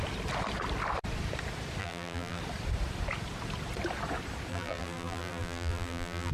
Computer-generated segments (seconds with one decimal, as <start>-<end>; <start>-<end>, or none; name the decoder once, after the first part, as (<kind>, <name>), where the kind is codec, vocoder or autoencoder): 1.8-2.4 (vocoder, BigVGAN v2); 4.5-6.3